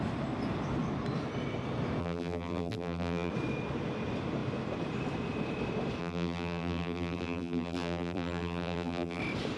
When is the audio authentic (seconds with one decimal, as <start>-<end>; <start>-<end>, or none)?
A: 0.0-2.0; 3.3-6.0; 9.2-9.6